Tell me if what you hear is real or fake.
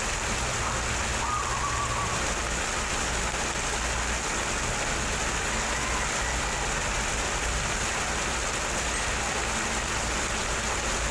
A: real